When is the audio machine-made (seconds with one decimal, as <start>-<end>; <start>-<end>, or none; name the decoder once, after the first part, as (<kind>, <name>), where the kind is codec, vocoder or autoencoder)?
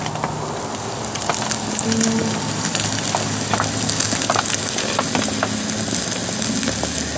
none